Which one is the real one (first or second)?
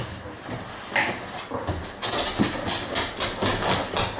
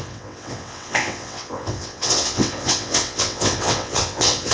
first